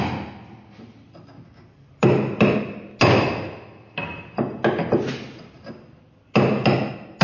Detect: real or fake real